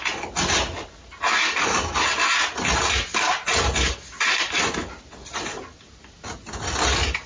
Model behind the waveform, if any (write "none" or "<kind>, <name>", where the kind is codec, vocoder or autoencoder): none